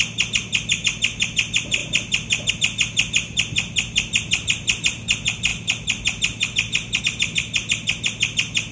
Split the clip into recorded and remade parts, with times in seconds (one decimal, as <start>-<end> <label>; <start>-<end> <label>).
0.0-8.7 recorded